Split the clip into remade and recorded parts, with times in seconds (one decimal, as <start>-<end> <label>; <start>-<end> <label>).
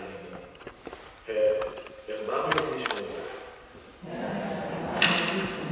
0.0-2.6 recorded; 2.6-5.3 remade; 5.3-5.7 recorded